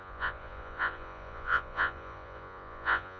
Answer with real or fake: fake